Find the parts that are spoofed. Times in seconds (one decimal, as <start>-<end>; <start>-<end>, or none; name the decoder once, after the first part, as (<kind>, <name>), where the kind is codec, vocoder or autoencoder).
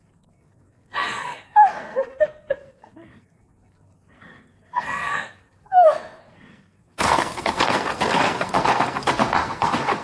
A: 0.0-10.0 (codec, SNAC)